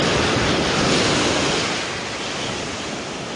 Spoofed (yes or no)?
no